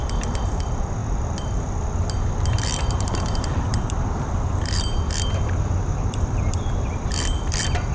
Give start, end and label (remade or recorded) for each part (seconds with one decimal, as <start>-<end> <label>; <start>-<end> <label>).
0.0-1.0 remade; 1.0-2.6 recorded; 2.6-7.9 remade